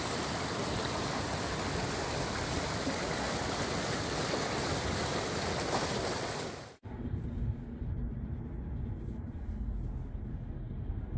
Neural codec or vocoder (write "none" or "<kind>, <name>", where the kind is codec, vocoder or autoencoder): none